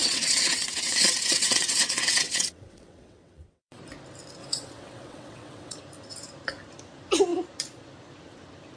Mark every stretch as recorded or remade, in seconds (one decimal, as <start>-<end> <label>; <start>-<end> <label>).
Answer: 0.0-3.8 remade; 3.8-4.4 recorded; 4.4-5.8 remade; 5.8-8.8 recorded

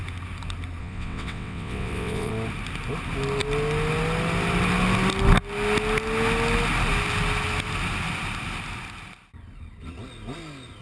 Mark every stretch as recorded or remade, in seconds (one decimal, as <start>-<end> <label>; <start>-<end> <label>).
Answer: 0.0-0.8 recorded; 0.8-2.3 remade; 2.3-10.8 recorded